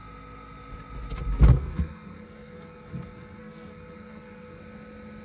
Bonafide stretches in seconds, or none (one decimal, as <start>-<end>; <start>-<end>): 0.0-1.5; 4.6-5.2

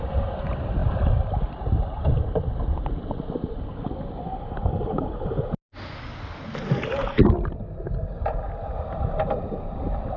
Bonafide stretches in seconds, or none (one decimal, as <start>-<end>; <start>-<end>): 0.0-10.2

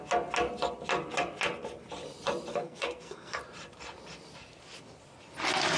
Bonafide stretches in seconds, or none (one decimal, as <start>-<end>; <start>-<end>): 0.0-2.5; 3.4-5.8

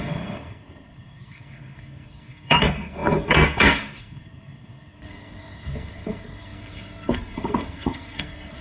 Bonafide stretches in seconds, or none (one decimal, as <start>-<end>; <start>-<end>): none

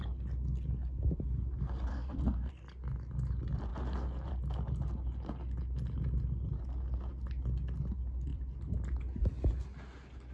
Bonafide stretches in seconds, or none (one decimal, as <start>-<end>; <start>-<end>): 0.0-1.9; 2.5-10.3